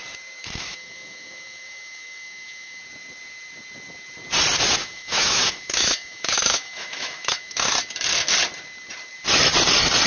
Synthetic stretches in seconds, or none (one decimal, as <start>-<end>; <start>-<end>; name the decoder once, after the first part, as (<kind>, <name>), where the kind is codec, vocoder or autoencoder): 0.4-2.8 (autoencoder, DAC-VAE); 4.8-7.7

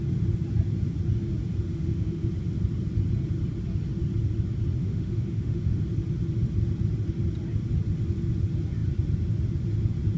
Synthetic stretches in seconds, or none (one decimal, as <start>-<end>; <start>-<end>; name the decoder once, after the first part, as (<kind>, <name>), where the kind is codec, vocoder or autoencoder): 1.7-2.3 (autoencoder, DAC-VAE); 4.8-5.8

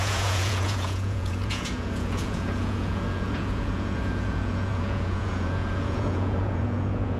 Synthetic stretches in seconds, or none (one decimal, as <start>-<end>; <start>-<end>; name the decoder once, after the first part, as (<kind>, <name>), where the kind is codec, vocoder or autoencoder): 0.0-7.2 (vocoder, Vocos)